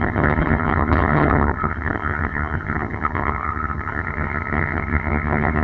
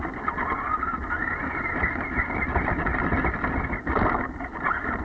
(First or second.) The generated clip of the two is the first